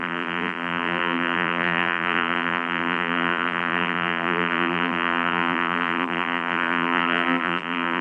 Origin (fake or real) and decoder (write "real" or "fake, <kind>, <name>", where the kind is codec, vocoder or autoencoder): fake, vocoder, BigVGAN v2